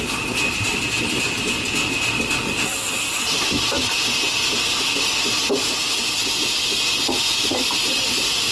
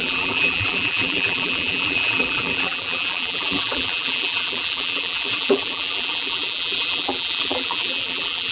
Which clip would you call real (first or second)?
first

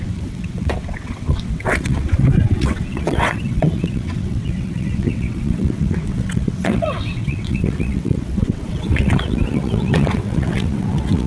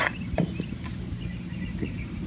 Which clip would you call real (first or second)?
second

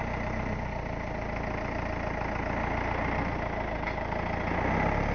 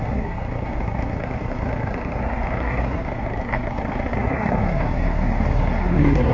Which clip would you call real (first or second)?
first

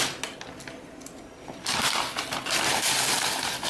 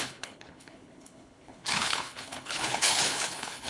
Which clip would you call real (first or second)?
first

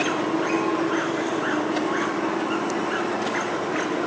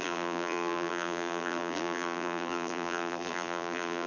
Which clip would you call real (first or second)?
first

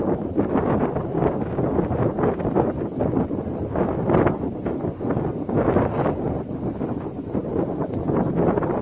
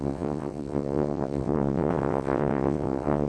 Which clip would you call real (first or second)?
first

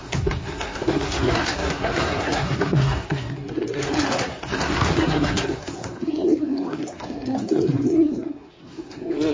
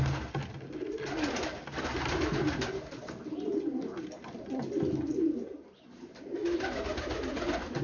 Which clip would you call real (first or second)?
second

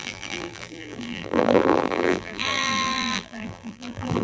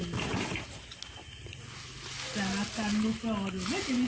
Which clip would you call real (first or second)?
second